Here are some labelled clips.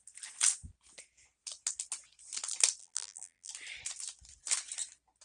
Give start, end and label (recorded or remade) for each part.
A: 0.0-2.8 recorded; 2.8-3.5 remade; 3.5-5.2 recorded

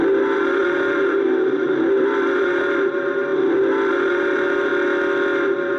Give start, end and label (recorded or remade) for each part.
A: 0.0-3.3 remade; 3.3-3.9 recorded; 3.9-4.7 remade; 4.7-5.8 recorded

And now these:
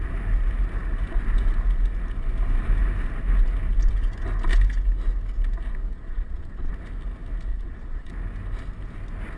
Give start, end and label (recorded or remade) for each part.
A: 0.0-5.9 recorded; 5.9-6.7 remade; 6.7-7.5 recorded; 7.5-8.1 remade; 8.1-9.4 recorded

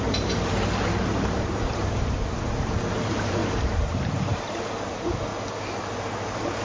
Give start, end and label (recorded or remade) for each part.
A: 0.0-5.3 remade; 5.3-6.6 recorded

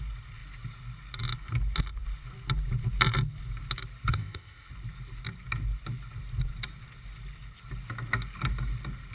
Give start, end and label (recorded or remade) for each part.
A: 0.0-4.1 recorded; 4.1-4.7 remade; 4.7-9.1 recorded

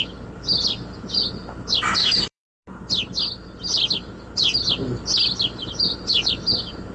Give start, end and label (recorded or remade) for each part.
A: 0.0-2.0 recorded; 2.0-2.7 remade; 2.7-6.9 recorded